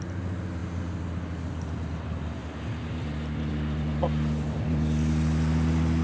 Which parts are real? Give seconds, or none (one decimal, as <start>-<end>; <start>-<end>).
0.0-6.0